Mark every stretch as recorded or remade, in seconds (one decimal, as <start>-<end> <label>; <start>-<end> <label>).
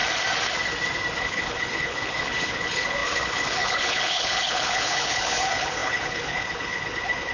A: 0.0-1.2 recorded; 1.2-7.3 remade